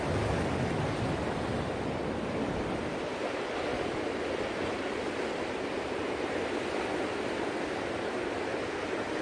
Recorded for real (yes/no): yes